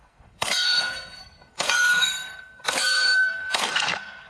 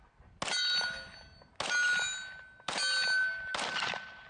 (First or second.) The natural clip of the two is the second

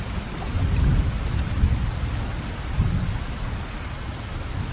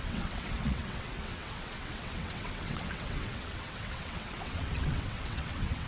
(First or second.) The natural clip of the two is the first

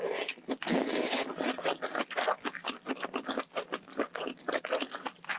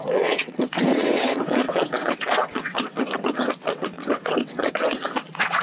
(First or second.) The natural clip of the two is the first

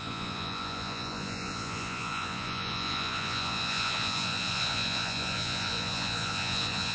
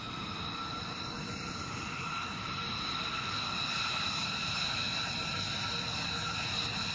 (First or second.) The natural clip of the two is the second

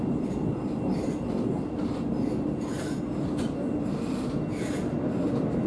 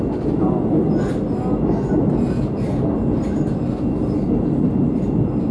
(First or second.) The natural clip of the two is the second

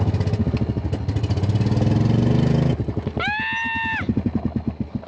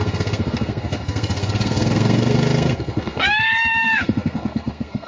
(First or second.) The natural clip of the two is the first